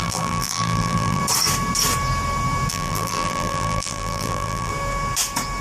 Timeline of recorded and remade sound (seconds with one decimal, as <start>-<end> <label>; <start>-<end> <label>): 0.0-1.2 remade; 1.2-2.7 recorded; 2.7-4.7 remade; 4.7-5.6 recorded